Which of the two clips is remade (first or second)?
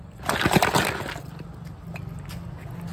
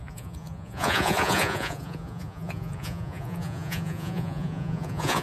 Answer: second